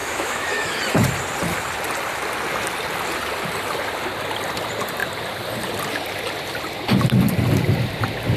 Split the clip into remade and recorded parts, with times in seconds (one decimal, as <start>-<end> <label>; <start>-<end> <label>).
0.0-0.8 remade; 0.8-8.4 recorded